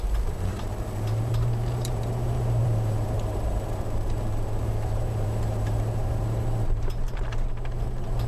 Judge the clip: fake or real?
fake